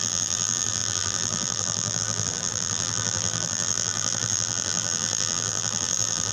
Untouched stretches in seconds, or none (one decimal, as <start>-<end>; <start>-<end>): none